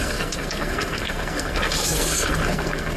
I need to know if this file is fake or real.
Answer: fake